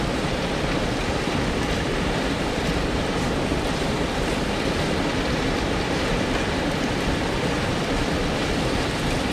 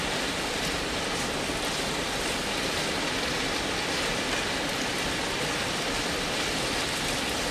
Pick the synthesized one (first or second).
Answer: first